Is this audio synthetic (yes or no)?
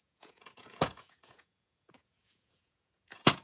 yes